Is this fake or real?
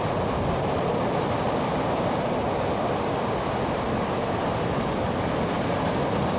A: real